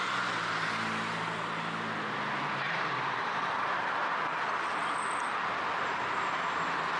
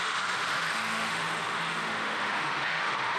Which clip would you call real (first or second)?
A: first